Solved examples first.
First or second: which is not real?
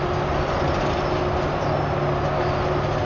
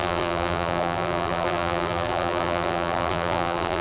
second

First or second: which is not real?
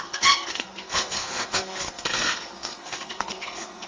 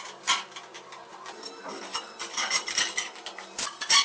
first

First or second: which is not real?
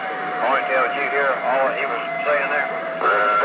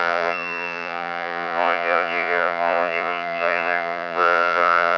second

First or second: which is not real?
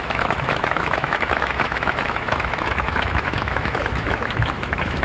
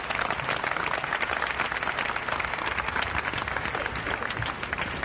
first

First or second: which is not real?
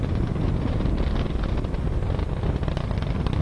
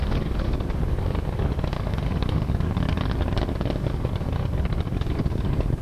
second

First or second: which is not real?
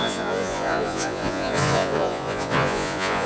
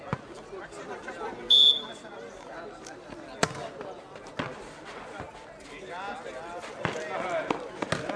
first